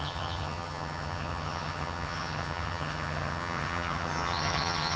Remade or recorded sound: remade